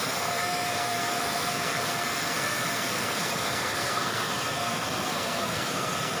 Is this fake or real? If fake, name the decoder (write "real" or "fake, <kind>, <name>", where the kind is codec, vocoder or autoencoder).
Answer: fake, codec, SNAC